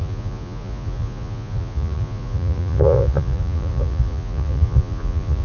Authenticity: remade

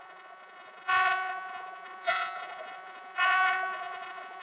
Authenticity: remade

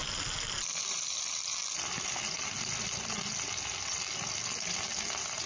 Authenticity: recorded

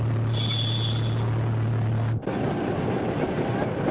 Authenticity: recorded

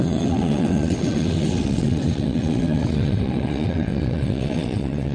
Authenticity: remade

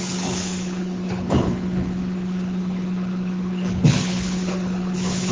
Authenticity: remade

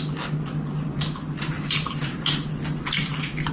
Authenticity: recorded